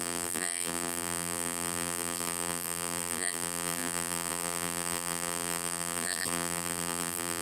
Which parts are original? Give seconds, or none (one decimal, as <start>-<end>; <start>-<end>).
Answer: none